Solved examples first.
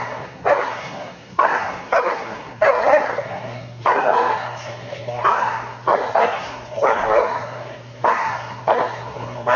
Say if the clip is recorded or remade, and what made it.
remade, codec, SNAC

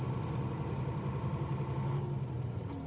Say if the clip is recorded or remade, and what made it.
recorded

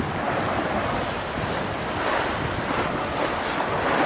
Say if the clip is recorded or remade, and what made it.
recorded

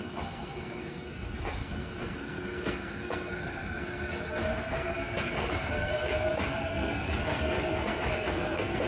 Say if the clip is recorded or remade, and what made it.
remade, codec, SNAC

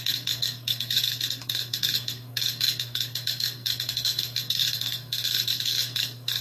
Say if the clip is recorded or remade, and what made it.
remade, codec, SNAC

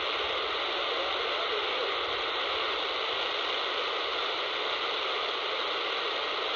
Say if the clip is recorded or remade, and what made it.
recorded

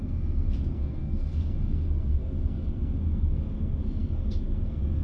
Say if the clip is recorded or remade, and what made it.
remade, codec, SNAC